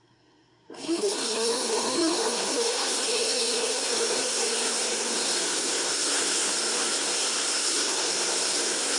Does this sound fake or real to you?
fake